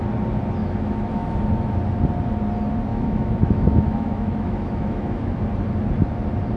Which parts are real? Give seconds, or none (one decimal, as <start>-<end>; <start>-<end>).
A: 0.0-0.6; 1.4-2.9; 5.4-6.6